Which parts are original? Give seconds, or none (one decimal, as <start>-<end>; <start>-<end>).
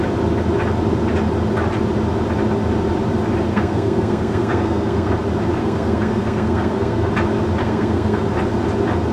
0.0-3.5; 5.1-5.6; 7.1-7.6; 8.2-9.1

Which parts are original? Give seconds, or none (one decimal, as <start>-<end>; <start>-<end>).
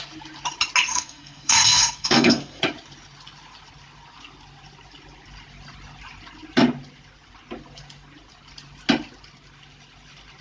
0.0-0.9; 2.6-10.4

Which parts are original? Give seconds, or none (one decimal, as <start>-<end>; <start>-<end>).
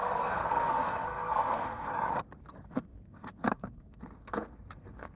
1.9-2.4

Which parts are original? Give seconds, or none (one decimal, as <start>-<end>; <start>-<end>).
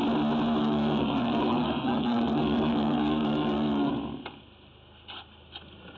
0.0-0.6; 3.9-6.0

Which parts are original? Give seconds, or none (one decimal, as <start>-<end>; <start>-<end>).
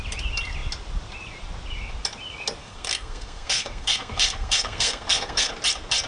0.0-2.6; 5.5-6.1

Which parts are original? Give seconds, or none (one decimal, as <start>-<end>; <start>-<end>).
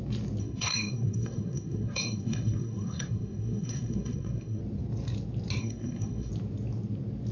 0.0-0.4; 4.6-5.6; 6.3-7.3